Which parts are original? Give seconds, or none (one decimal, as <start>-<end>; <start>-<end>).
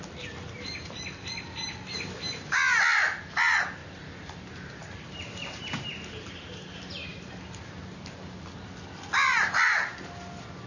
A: 0.0-3.8; 6.5-7.1; 7.8-10.7